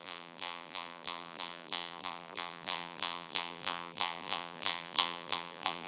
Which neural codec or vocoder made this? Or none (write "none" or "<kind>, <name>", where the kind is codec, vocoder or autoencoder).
vocoder, BigVGAN v2